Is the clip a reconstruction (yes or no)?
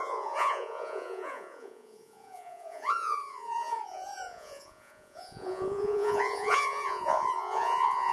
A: yes